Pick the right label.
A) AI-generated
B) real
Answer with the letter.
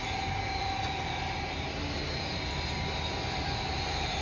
A